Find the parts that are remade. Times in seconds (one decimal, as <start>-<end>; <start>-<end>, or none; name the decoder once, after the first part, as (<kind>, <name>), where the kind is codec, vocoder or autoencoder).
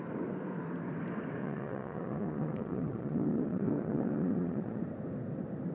1.4-4.8 (vocoder, Vocos)